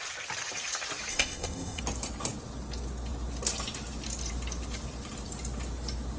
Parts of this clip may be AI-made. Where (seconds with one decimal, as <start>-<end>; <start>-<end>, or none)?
1.1-1.8